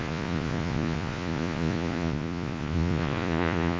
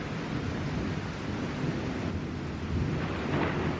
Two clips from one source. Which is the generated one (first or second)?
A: first